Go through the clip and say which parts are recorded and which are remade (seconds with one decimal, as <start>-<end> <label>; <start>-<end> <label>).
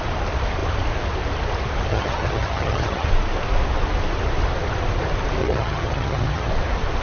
0.0-1.9 recorded; 1.9-3.1 remade; 3.1-5.4 recorded; 5.4-6.5 remade; 6.5-7.0 recorded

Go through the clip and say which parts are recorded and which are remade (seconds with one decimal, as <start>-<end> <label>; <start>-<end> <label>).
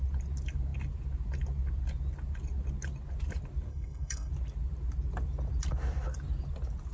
0.0-3.7 recorded; 3.7-4.3 remade; 4.3-6.9 recorded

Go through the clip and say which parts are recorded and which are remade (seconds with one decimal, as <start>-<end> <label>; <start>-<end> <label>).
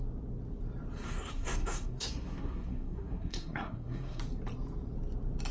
0.0-1.0 recorded; 1.0-4.2 remade; 4.2-5.5 recorded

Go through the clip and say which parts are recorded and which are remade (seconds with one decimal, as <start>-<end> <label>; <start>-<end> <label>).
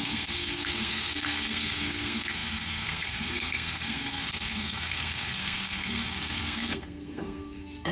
0.0-7.9 remade